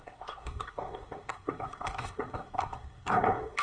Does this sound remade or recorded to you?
remade